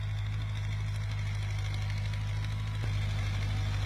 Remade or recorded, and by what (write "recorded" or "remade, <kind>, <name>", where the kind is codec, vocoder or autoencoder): recorded